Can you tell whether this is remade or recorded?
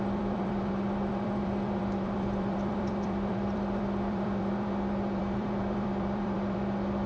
remade